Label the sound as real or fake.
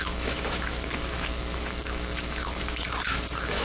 fake